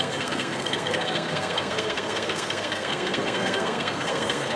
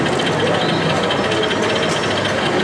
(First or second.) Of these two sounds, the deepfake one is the first